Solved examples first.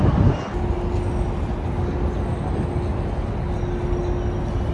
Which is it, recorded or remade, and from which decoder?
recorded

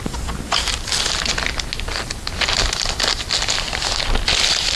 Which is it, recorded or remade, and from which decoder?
recorded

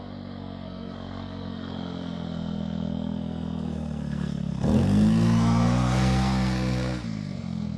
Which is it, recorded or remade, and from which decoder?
remade, codec, SNAC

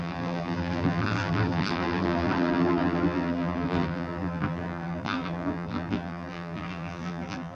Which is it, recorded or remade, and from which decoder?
remade, vocoder, BigVGAN v2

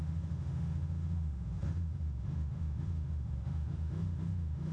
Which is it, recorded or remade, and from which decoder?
remade, autoencoder, DAC-VAE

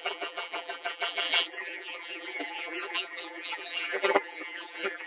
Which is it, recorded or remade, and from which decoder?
remade, vocoder, BigVGAN v2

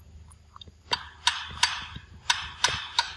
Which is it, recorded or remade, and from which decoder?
recorded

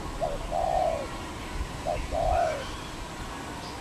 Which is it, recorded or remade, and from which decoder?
recorded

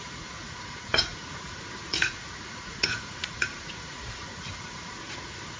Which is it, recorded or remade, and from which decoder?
remade, vocoder, Vocos